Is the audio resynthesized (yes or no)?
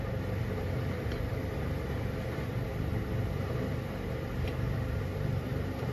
yes